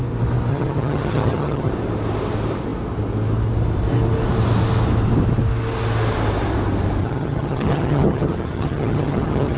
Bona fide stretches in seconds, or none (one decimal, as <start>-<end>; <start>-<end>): 0.0-0.5; 1.7-7.0